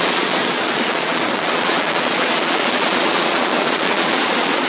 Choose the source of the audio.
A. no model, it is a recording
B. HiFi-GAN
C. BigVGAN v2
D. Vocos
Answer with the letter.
D